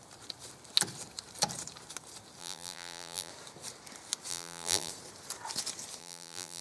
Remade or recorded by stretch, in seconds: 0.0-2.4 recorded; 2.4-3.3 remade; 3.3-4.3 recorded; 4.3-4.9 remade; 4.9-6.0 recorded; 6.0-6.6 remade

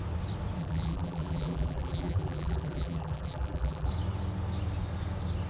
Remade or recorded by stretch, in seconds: 0.0-0.6 recorded; 0.6-3.9 remade; 3.9-5.5 recorded

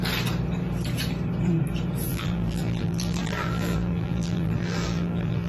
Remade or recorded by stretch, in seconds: 0.0-2.1 recorded; 2.1-5.5 remade

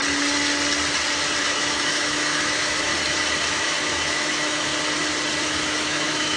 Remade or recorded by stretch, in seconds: 0.0-1.4 recorded; 1.4-2.9 remade; 2.9-3.5 recorded; 3.5-4.7 remade; 4.7-5.4 recorded; 5.4-6.4 remade